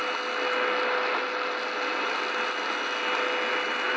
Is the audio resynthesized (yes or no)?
no